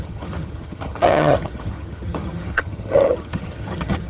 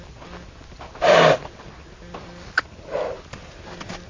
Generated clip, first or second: first